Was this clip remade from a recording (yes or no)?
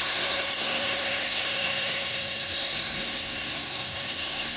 yes